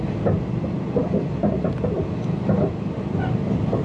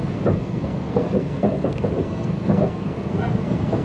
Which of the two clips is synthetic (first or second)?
second